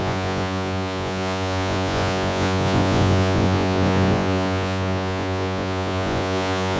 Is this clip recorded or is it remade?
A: remade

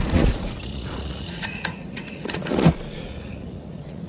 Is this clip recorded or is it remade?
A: remade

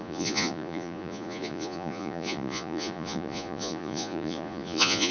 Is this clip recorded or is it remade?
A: remade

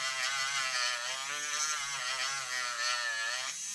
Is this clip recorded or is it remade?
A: recorded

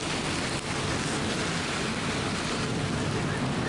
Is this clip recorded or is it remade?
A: recorded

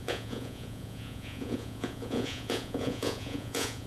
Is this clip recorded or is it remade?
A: remade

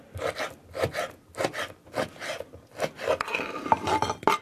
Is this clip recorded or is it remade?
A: recorded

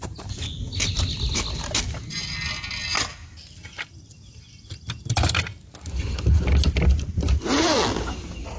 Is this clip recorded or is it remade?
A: recorded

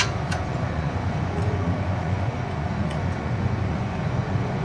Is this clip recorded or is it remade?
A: remade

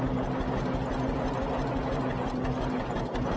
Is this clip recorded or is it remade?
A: recorded